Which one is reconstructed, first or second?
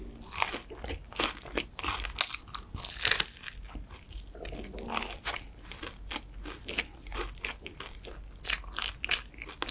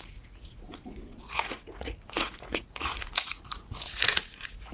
second